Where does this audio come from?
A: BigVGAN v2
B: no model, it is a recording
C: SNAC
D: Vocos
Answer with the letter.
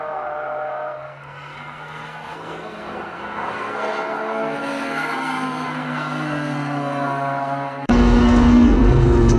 C